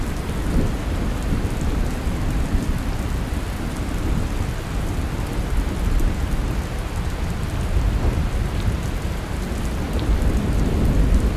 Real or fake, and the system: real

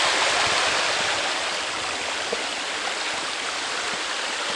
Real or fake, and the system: real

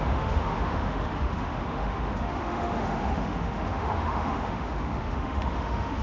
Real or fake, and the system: fake, autoencoder, DAC-VAE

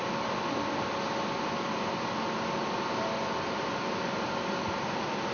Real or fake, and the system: real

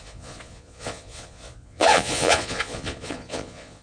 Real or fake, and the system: fake, vocoder, Vocos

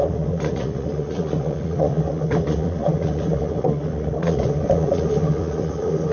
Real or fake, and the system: fake, vocoder, Vocos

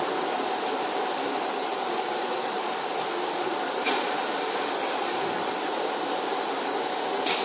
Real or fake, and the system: real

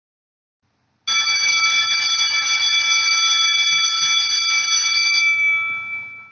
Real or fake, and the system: real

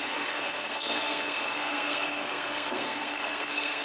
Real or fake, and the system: fake, codec, SNAC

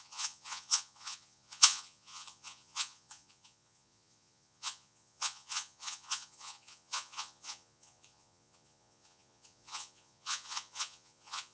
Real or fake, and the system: fake, vocoder, Vocos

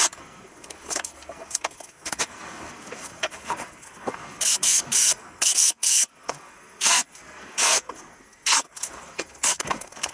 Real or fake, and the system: fake, codec, SNAC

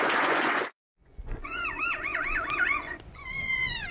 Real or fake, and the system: fake, vocoder, Vocos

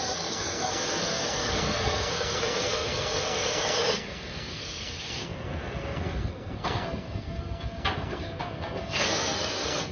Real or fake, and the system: fake, codec, SNAC